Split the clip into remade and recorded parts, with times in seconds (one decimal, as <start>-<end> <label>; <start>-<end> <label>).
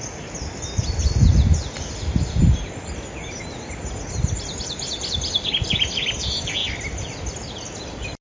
0.0-8.2 recorded